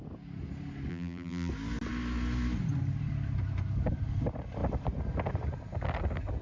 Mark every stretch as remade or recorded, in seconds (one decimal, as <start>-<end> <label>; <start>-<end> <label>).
0.0-0.9 recorded; 0.9-1.5 remade; 1.5-6.4 recorded